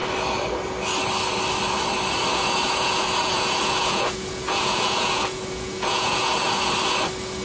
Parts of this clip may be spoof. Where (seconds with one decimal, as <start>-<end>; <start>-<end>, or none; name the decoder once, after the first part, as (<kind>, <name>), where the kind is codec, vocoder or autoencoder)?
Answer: 2.3-6.7 (vocoder, Vocos)